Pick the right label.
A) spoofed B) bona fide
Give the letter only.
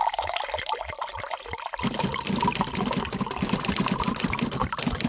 B